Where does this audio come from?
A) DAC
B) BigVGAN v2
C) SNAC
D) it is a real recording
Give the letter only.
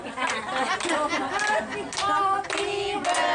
D